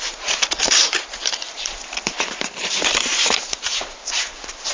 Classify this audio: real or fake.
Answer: fake